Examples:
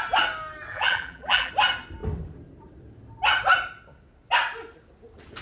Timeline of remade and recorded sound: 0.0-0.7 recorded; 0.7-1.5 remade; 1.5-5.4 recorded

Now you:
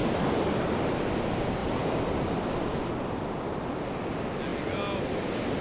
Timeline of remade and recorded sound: 0.0-5.6 recorded

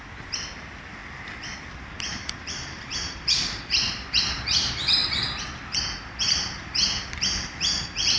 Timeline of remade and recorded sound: 0.0-2.1 recorded; 2.1-4.3 remade; 4.3-8.2 recorded

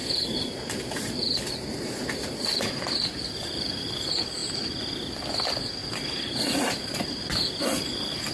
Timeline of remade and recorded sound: 0.0-3.9 remade; 3.9-5.8 recorded; 5.8-7.6 remade; 7.6-8.3 recorded